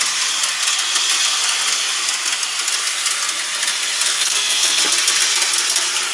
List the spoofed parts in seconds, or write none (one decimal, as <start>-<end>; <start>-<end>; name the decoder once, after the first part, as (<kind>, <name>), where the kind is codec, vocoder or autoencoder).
4.1-4.8 (codec, SNAC)